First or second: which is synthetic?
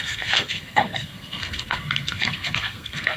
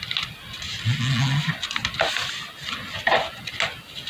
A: first